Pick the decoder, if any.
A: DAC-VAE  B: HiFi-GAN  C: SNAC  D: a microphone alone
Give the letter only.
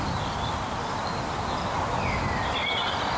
D